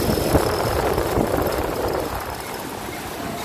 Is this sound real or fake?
fake